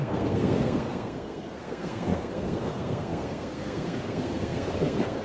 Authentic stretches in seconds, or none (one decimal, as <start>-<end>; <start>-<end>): none